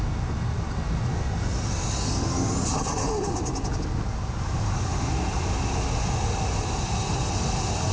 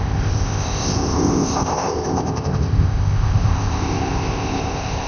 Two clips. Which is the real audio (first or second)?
first